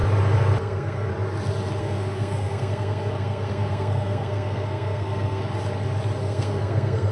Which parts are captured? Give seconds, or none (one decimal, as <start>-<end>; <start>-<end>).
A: 0.0-0.6; 1.1-1.8; 5.4-6.2